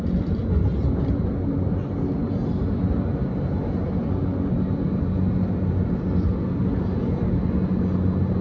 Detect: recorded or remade recorded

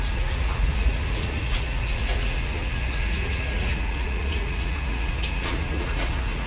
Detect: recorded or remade remade